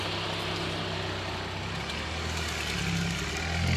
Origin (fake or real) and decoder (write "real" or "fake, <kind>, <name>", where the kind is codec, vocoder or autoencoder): real